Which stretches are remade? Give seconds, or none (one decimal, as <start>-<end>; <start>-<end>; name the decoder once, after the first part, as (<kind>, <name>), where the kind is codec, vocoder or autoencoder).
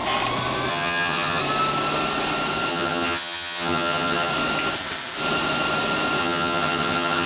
0.7-1.4 (vocoder, HiFi-GAN); 2.7-4.3; 6.2-7.3